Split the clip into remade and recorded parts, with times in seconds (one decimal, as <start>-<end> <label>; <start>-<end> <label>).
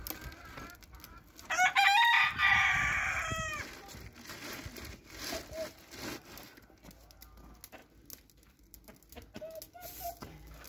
0.0-10.7 recorded